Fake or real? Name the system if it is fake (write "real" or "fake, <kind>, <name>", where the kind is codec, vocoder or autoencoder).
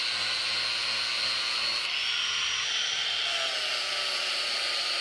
real